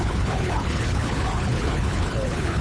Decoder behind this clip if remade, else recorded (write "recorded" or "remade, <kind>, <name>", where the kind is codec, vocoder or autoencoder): remade, codec, HILCodec